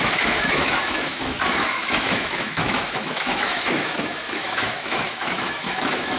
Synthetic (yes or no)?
yes